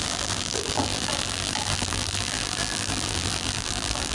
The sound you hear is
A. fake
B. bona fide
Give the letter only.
A